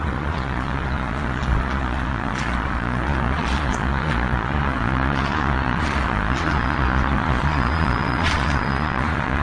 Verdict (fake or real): fake